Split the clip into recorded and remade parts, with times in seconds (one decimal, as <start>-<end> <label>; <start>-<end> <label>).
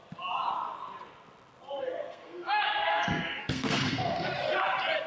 0.0-1.8 recorded; 1.8-4.3 remade; 4.3-5.1 recorded